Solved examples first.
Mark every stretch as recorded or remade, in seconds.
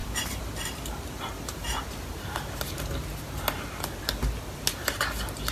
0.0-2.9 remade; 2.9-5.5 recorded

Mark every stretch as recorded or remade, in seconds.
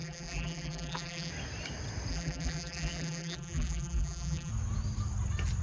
0.0-1.3 remade; 1.3-2.1 recorded; 2.1-4.5 remade; 4.5-5.6 recorded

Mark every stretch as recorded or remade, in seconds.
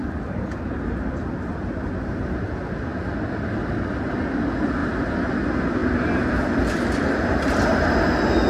0.0-5.8 recorded; 5.8-8.0 remade; 8.0-8.5 recorded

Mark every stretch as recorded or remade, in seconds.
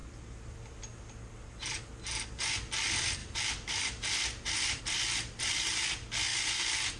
0.0-1.1 remade; 1.1-3.2 recorded; 3.2-4.8 remade; 4.8-6.3 recorded; 6.3-7.0 remade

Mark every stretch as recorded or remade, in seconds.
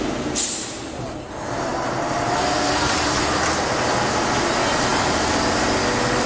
0.0-6.3 recorded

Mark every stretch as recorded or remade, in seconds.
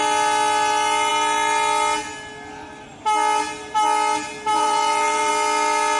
0.0-4.5 recorded; 4.5-5.3 remade; 5.3-6.0 recorded